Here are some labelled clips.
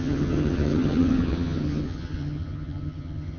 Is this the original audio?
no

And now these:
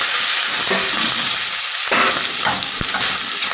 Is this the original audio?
yes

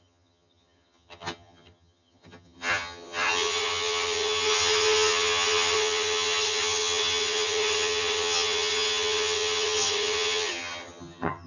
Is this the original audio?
no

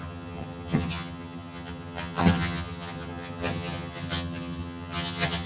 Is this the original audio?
no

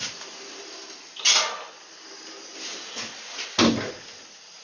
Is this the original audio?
yes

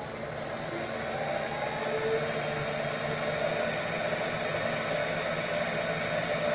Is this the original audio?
yes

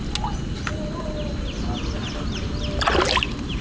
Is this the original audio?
yes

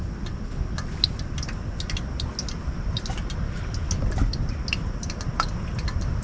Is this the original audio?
yes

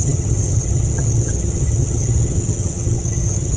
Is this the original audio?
no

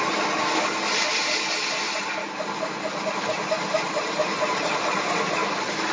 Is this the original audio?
yes